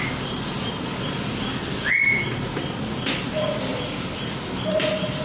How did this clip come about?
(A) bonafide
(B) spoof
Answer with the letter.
A